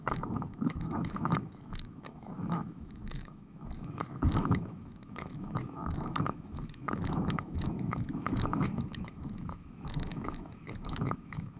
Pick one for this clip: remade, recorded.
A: remade